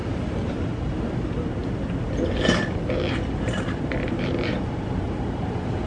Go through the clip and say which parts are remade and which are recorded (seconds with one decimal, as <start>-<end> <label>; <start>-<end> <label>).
0.0-1.6 recorded; 1.6-5.1 remade; 5.1-5.9 recorded